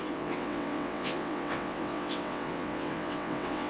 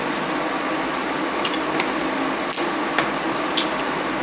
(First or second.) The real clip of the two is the second